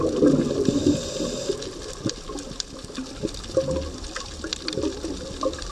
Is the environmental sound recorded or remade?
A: recorded